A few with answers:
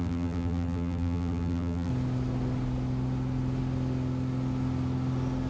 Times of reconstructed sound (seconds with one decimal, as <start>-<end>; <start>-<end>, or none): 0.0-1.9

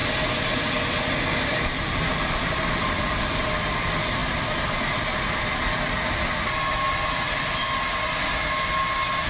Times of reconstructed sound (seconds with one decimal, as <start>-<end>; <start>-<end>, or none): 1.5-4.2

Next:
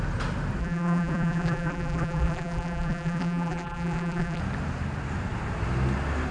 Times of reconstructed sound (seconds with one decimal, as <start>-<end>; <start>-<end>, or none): 0.6-4.4

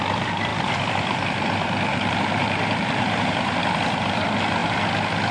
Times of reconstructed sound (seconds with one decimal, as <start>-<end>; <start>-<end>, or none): 1.9-3.6

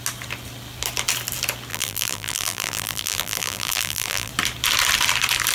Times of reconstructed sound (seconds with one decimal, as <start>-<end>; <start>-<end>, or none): 1.7-4.3